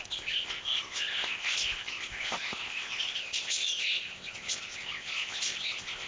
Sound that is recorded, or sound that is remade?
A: remade